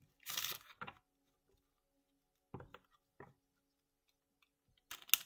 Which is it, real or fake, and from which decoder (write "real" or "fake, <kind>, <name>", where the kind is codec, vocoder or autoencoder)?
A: real